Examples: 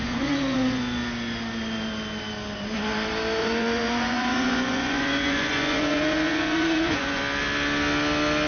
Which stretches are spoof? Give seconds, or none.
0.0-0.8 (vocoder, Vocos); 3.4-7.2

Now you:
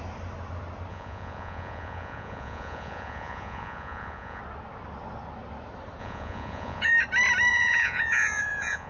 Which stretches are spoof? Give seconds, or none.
0.9-4.4 (vocoder, Vocos); 6.0-6.9; 7.5-8.9

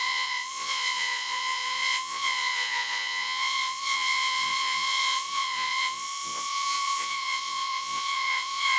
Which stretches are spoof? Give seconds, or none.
0.0-8.8 (vocoder, Vocos)

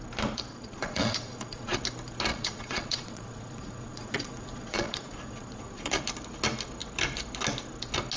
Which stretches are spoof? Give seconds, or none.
0.5-1.8 (vocoder, Vocos); 2.3-6.0

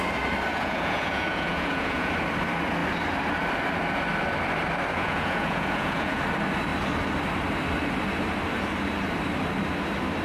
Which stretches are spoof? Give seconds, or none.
0.5-2.1 (vocoder, Vocos); 4.9-6.2

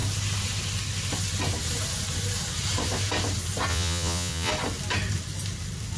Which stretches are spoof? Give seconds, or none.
3.7-4.5 (vocoder, Vocos)

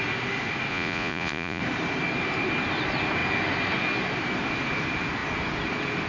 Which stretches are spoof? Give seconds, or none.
0.7-1.6 (vocoder, Vocos)